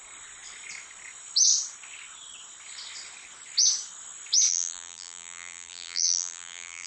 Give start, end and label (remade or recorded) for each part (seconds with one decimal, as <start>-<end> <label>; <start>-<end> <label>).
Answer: 0.0-4.5 recorded; 4.5-6.9 remade